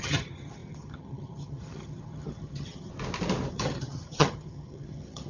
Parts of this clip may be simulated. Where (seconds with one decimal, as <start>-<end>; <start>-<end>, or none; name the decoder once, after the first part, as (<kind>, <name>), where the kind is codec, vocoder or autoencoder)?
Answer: 0.0-2.9 (vocoder, HiFi-GAN); 3.5-5.3